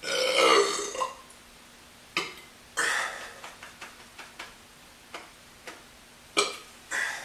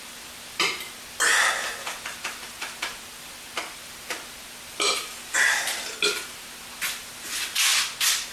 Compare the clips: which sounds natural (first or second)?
first